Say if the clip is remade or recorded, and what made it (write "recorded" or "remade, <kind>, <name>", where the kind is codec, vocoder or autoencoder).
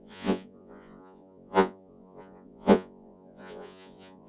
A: remade, vocoder, Vocos